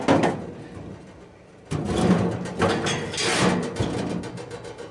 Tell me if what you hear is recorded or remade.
recorded